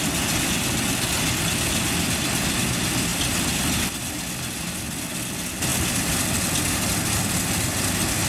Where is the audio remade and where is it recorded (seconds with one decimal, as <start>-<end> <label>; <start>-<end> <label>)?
0.0-3.1 recorded; 3.1-3.9 remade; 3.9-5.7 recorded; 5.7-6.2 remade; 6.2-8.3 recorded